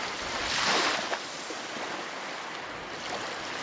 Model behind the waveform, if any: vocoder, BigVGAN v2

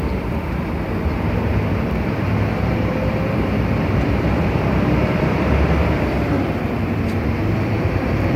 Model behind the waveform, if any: vocoder, BigVGAN v2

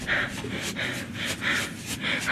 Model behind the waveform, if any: none